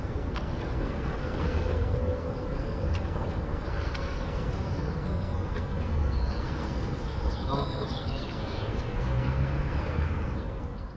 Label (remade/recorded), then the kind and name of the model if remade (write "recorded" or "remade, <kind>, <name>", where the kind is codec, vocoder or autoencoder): remade, codec, SNAC